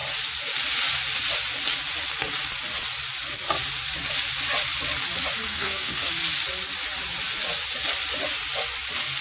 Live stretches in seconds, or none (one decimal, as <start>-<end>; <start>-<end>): 0.0-5.5; 6.1-9.2